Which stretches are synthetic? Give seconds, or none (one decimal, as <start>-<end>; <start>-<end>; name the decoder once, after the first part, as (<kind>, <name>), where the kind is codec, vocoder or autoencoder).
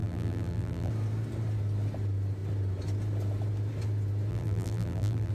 0.0-0.9 (vocoder, BigVGAN v2); 4.3-5.3